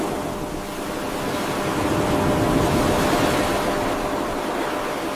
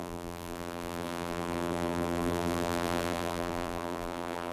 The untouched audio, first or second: first